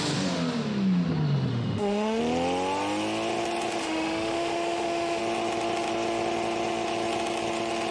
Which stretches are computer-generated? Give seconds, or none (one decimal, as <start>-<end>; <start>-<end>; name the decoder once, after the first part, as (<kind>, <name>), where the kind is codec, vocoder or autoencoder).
1.5-2.2 (autoencoder, DAC-VAE); 3.8-5.2